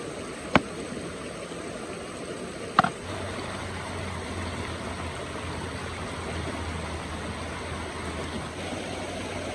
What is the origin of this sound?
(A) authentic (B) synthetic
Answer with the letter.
A